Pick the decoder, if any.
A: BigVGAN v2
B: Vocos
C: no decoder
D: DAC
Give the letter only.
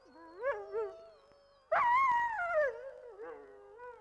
C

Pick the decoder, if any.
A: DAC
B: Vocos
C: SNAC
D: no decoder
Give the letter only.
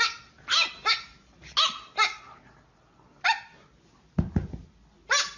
D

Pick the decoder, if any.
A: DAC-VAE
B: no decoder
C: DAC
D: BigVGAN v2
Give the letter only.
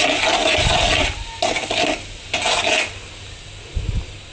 B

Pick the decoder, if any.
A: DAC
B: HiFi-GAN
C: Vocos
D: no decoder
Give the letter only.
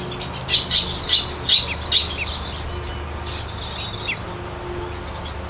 D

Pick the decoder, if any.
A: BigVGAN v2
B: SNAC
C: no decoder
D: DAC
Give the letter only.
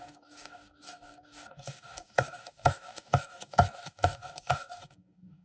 D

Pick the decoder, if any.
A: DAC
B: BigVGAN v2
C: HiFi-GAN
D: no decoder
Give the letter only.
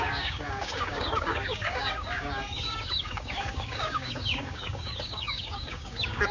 A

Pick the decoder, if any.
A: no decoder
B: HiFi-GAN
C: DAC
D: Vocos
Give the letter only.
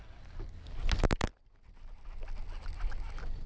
A